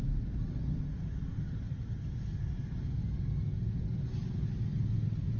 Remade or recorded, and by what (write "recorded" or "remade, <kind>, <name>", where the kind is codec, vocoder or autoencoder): recorded